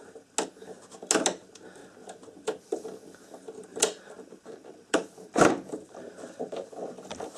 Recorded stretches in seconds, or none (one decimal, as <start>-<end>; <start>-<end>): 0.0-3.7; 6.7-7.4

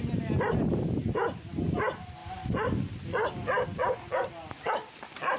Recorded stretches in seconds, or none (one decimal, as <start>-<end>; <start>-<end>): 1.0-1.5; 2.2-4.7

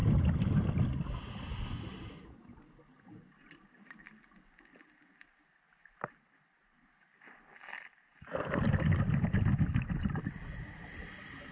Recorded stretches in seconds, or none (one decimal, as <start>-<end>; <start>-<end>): 0.6-11.5